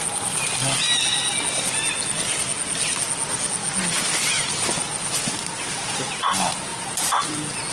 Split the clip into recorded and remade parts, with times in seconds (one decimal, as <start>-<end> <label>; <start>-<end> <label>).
0.0-7.7 recorded